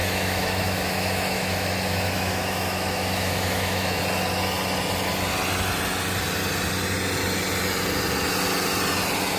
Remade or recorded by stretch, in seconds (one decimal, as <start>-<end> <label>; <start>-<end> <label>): 0.0-4.0 remade; 4.0-9.4 recorded